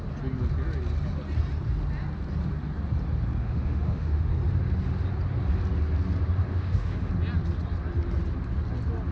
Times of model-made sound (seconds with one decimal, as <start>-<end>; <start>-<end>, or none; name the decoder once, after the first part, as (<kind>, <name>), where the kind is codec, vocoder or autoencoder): 3.4-4.3 (autoencoder, DAC-VAE); 6.5-7.1